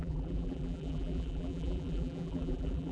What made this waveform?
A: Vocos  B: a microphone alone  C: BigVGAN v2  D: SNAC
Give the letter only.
C